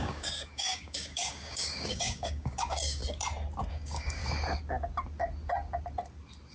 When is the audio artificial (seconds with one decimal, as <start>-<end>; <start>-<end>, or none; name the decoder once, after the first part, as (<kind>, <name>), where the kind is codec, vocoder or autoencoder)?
0.0-3.0 (codec, DAC); 3.7-4.2